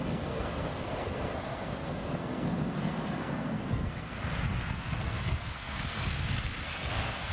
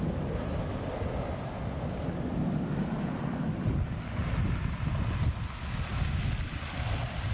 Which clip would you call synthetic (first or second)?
first